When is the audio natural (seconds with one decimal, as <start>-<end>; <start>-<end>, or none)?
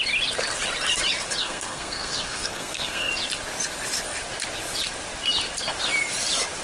0.0-1.4; 3.1-6.6